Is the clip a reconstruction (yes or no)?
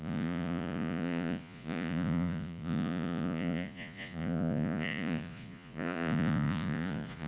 yes